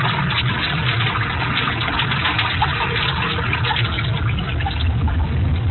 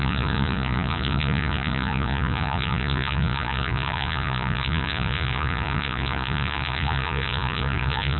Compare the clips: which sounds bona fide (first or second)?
first